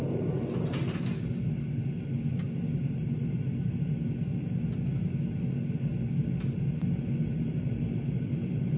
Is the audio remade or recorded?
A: recorded